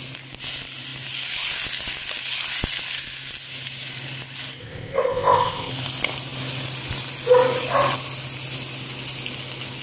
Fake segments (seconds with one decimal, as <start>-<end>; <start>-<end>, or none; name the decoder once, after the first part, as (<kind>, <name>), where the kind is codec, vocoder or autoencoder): 4.6-5.7 (codec, ZipCodec)